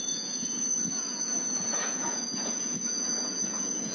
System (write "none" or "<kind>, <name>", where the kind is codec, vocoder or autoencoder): vocoder, Vocos